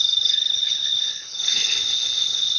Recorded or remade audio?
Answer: remade